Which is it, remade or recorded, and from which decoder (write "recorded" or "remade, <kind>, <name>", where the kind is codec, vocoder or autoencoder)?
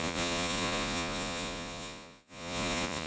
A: remade, vocoder, Vocos